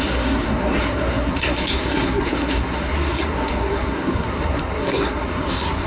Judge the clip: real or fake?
fake